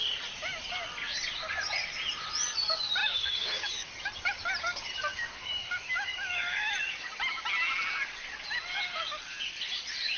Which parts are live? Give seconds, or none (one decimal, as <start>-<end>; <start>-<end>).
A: 0.0-3.0; 3.9-5.1; 6.7-10.2

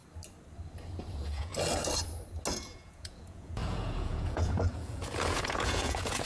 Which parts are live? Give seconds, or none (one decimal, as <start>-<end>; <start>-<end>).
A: 0.0-1.1; 1.5-2.5

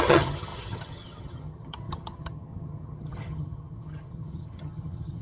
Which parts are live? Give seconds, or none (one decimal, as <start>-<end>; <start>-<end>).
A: none

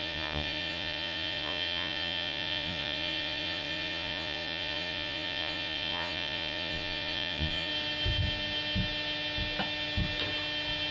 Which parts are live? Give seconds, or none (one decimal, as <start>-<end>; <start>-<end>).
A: 7.7-10.9

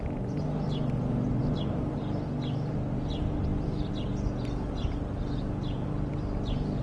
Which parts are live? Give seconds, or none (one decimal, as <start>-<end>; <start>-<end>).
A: 0.0-1.4; 2.0-3.5; 4.1-6.8

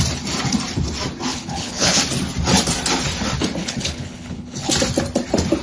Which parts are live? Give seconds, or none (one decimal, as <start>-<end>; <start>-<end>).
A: 0.0-1.3; 2.0-3.6; 4.7-5.6

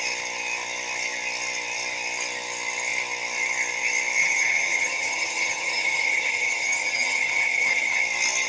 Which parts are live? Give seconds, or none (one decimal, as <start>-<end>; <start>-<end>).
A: 0.0-4.2; 8.0-8.5